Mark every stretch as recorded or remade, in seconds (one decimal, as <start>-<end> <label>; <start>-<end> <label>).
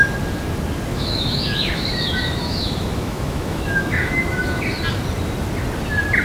0.0-0.9 recorded; 0.9-4.6 remade; 4.6-6.2 recorded